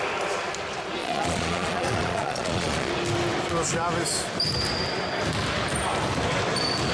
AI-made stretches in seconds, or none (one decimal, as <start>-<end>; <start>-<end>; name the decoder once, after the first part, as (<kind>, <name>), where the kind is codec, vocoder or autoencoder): 1.0-2.9 (vocoder, Vocos)